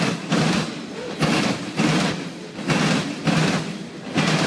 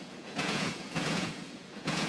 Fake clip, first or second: second